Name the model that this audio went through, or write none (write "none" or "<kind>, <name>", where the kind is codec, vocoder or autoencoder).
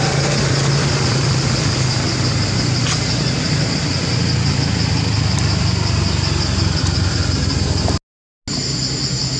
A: none